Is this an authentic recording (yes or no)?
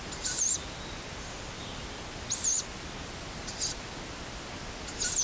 yes